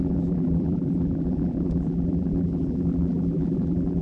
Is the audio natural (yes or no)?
no